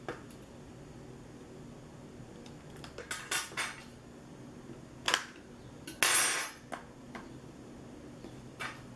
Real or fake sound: real